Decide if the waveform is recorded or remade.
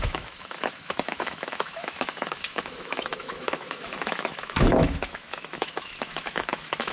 remade